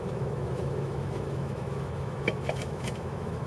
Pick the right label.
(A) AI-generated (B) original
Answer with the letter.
A